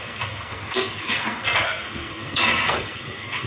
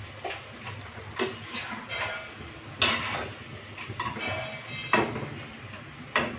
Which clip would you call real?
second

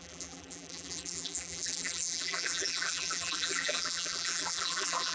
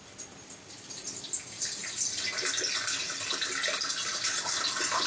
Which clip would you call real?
second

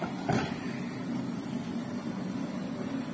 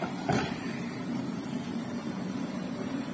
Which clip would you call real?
first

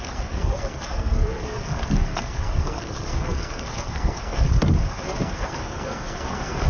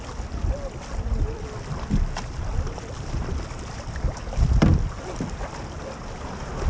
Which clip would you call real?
second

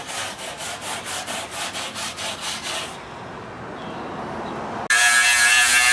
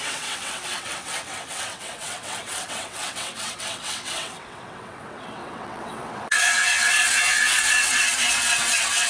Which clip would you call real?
first